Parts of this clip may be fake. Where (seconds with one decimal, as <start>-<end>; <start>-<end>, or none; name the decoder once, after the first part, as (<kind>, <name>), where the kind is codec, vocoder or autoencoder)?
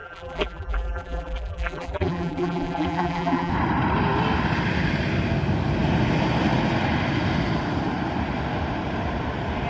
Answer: 0.0-3.5 (vocoder, BigVGAN v2)